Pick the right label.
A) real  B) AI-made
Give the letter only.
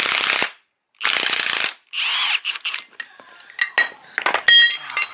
A